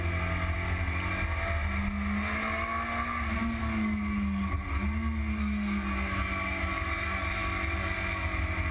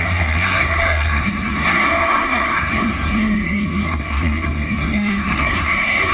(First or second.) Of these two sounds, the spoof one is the second